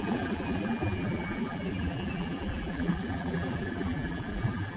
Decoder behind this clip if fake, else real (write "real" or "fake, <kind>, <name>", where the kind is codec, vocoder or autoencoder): fake, vocoder, BigVGAN v2